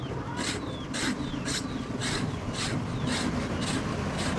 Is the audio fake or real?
real